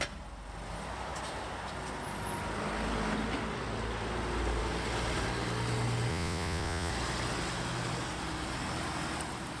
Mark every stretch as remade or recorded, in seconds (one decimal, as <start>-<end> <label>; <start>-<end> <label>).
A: 0.0-6.1 recorded; 6.1-6.9 remade; 6.9-9.6 recorded